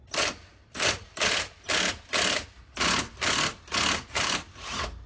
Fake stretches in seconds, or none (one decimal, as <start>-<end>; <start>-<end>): none